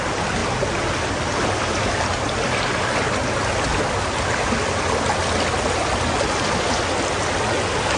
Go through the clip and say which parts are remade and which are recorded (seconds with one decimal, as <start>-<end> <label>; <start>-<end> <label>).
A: 0.0-8.0 recorded